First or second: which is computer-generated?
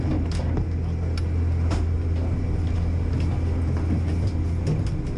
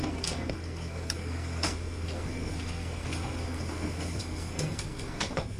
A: second